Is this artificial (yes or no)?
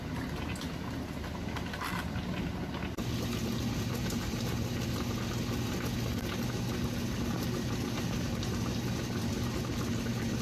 no